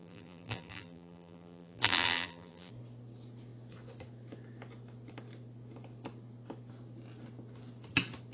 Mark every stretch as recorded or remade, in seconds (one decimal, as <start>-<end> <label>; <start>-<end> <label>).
0.0-2.7 remade; 2.7-8.3 recorded

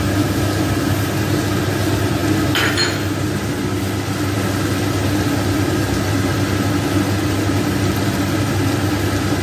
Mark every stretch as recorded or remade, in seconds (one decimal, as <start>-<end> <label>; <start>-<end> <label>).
0.0-9.4 recorded

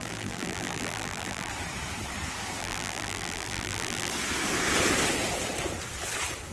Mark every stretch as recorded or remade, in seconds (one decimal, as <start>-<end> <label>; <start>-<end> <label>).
0.0-1.5 remade; 1.5-2.6 recorded; 2.6-4.1 remade; 4.1-6.5 recorded

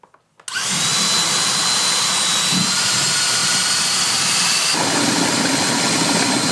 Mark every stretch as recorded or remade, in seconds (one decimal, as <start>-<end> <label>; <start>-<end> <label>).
0.0-6.5 recorded